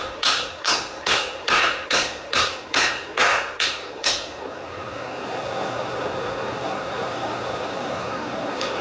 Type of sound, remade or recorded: remade